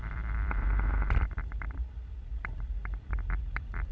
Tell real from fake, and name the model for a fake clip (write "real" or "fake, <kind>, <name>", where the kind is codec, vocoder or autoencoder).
fake, vocoder, BigVGAN v2